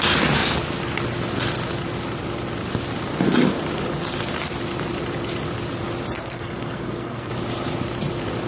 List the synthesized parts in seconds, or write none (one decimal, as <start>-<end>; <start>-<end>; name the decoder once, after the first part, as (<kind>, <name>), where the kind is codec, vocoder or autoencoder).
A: 6.2-7.3 (codec, SNAC)